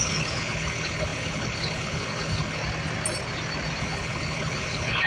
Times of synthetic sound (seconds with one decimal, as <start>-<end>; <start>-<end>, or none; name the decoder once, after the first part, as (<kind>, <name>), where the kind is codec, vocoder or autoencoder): 0.0-2.6 (codec, HILCodec); 3.8-5.1